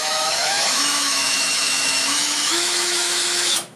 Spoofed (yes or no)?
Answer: yes